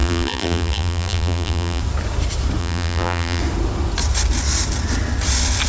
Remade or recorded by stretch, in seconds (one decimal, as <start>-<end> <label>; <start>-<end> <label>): 0.0-1.8 remade; 1.8-2.6 recorded; 2.6-3.4 remade; 3.4-5.7 recorded